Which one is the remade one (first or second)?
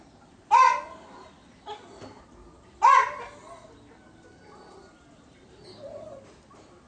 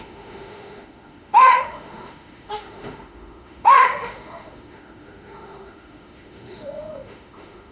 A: second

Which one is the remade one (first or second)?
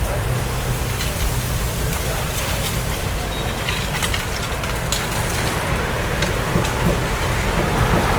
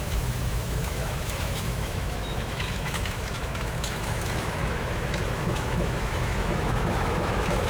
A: second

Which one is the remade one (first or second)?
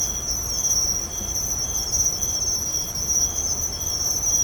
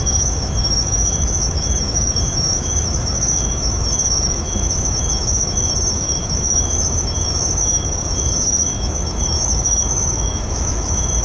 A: second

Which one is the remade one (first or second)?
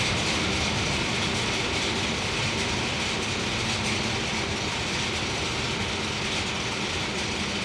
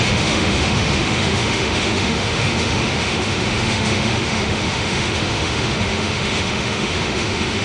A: second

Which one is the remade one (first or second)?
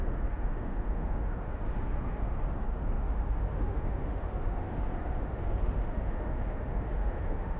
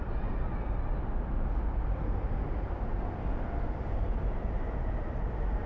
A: first